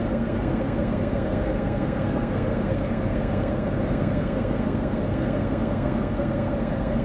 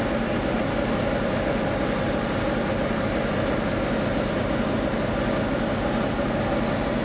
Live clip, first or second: second